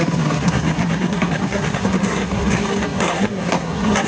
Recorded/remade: remade